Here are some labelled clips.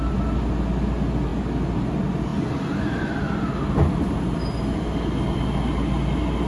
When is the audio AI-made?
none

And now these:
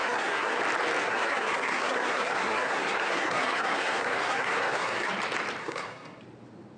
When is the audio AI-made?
0.0-0.6; 1.0-5.1; 5.6-6.2

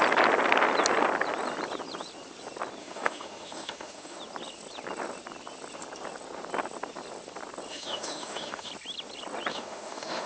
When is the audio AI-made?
2.8-4.2; 7.7-8.7; 9.5-10.3

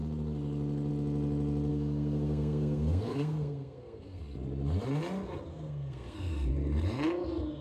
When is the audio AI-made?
1.7-4.2; 5.5-6.5

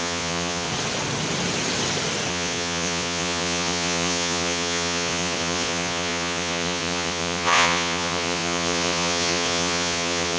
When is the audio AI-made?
0.0-0.7; 2.3-10.4

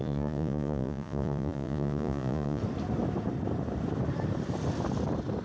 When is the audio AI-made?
0.0-2.6

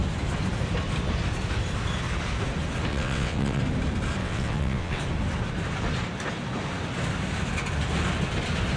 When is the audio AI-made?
2.9-3.6; 4.2-5.0